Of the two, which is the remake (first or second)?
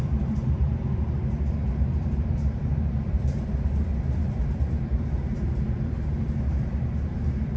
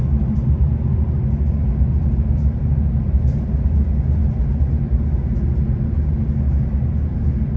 first